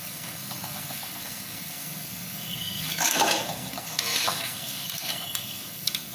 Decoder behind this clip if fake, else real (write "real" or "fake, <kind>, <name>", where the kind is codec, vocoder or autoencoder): fake, codec, SNAC